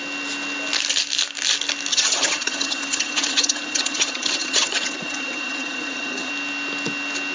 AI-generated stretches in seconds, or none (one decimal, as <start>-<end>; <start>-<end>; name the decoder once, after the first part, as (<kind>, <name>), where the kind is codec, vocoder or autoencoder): 1.9-6.3 (vocoder, HiFi-GAN)